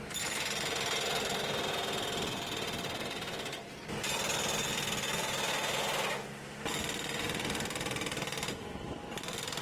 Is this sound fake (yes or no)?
no